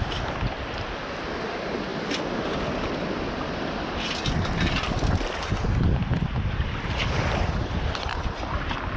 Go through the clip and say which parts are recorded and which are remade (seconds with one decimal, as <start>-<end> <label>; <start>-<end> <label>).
0.0-9.0 recorded